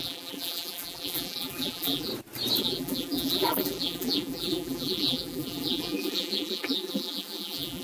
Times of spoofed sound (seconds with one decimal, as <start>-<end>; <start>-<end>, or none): 0.0-2.1; 2.6-7.8